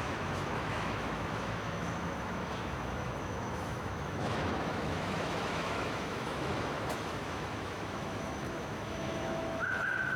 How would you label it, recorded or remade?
remade